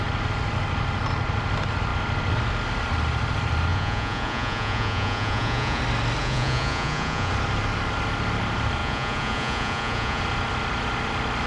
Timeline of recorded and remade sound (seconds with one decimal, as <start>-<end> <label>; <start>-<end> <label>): 0.0-3.7 recorded; 3.7-5.8 remade; 5.8-6.2 recorded; 6.2-7.3 remade; 7.3-8.8 recorded; 8.8-10.2 remade; 10.2-11.5 recorded